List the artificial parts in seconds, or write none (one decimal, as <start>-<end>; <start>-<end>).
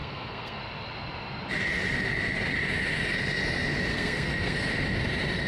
0.0-0.6; 3.9-4.7